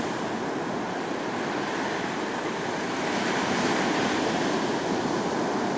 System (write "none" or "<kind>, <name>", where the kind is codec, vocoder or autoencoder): none